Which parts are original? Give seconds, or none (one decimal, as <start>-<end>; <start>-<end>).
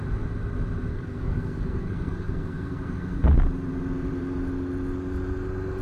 0.0-0.9; 3.2-5.8